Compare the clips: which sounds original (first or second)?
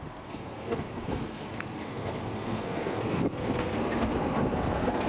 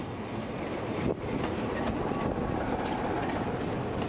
second